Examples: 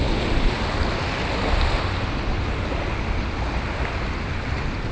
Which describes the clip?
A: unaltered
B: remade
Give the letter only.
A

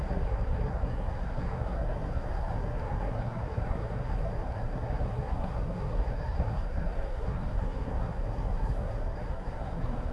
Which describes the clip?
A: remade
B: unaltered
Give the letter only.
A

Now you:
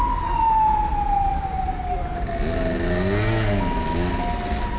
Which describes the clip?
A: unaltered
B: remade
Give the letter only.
A